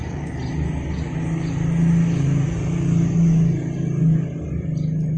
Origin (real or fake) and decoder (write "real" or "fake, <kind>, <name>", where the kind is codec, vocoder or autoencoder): real